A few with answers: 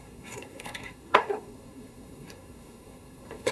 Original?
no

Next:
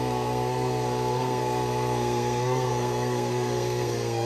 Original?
no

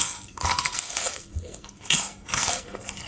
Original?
no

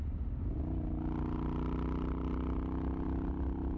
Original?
yes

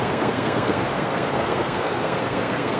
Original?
no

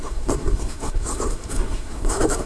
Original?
no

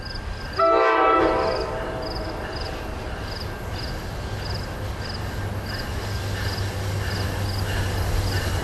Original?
yes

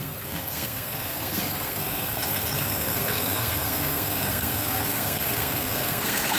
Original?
no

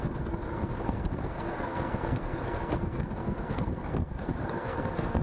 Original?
no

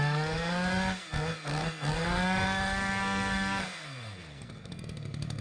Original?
no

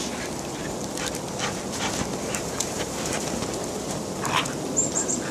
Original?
yes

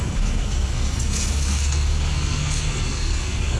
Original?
no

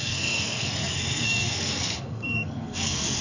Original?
no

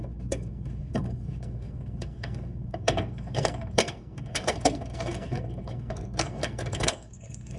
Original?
no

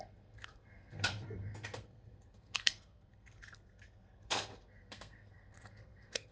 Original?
no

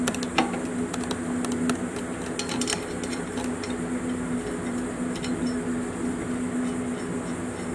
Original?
yes